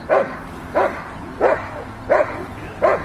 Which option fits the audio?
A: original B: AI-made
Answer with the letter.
B